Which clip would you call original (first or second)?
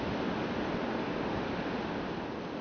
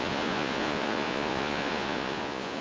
first